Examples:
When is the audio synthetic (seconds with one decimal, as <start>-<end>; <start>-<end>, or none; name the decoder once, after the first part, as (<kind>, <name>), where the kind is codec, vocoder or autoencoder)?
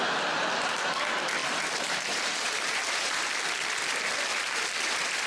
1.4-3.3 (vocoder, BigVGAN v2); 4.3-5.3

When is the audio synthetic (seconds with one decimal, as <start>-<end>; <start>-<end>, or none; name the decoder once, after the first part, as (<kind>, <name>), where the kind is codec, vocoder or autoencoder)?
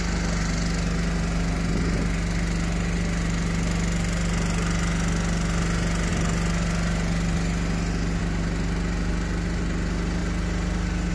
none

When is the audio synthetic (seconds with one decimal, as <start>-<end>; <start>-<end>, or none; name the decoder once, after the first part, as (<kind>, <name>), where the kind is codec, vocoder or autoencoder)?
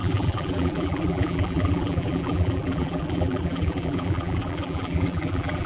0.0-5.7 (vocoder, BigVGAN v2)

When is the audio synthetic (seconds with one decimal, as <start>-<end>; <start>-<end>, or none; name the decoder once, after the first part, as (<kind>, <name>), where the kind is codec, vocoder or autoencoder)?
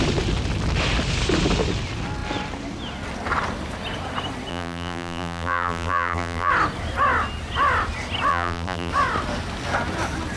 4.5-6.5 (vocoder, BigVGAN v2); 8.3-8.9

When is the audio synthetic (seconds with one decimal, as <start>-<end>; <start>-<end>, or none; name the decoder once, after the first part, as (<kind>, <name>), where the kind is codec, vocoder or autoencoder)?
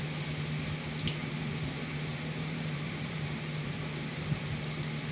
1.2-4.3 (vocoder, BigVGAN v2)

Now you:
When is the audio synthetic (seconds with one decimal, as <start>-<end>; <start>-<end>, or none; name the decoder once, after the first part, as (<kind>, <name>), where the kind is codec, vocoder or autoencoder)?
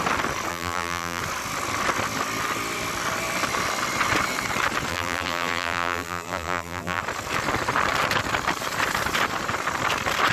0.5-1.2 (vocoder, BigVGAN v2); 4.9-7.0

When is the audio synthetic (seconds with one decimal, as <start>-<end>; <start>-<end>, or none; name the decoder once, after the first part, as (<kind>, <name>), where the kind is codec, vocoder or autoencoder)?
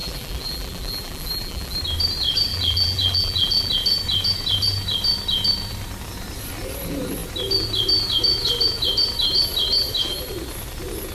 0.0-1.8 (vocoder, BigVGAN v2); 2.5-3.7